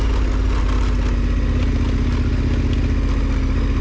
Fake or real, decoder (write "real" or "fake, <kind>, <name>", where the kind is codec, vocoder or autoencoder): real